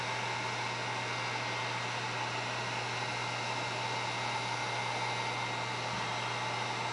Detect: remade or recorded recorded